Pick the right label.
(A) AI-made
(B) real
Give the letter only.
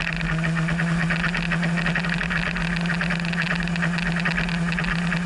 B